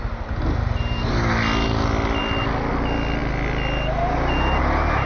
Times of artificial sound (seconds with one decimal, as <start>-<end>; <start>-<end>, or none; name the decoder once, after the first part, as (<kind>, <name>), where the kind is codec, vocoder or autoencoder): none